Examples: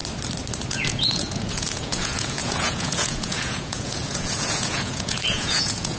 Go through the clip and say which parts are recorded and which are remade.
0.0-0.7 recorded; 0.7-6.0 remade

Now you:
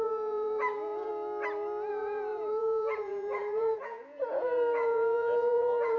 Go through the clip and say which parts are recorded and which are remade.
0.0-1.1 remade; 1.1-1.9 recorded; 1.9-6.0 remade

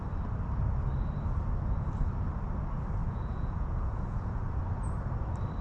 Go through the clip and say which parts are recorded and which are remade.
0.0-3.0 recorded; 3.0-4.6 remade; 4.6-5.6 recorded

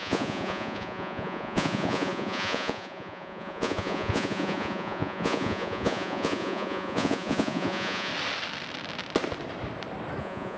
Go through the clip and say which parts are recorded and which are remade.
0.0-8.1 remade; 8.1-10.2 recorded; 10.2-10.6 remade